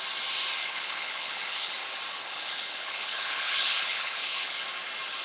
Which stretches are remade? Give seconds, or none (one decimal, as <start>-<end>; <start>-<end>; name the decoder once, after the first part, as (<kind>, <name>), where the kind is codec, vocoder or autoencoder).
0.6-1.7 (codec, HILCodec); 2.1-4.6